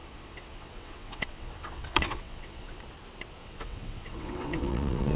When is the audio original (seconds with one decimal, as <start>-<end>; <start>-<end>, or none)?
2.8-3.4